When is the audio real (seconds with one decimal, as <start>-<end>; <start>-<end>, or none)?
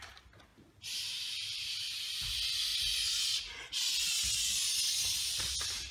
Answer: 0.0-5.9